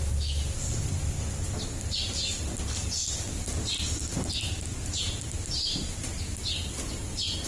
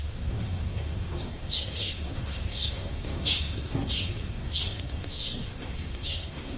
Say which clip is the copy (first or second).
second